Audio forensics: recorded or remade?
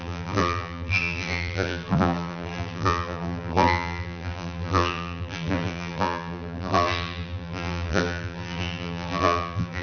remade